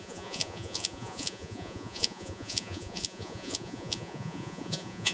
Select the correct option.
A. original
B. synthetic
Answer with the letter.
B